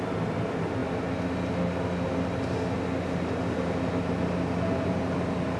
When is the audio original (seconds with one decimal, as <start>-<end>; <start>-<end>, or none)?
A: 0.0-5.6